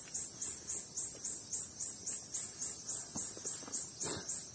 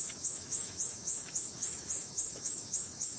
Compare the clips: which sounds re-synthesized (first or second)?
second